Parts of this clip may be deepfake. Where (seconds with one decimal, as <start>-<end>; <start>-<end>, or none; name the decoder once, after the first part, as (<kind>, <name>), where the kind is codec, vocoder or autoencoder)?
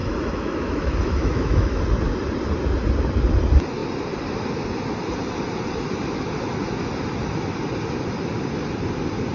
0.0-1.8 (autoencoder, DAC-VAE)